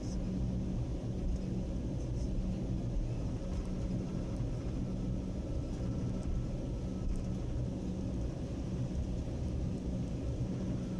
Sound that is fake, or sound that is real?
real